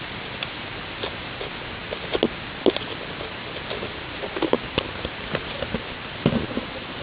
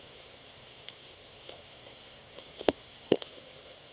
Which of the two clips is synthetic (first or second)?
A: second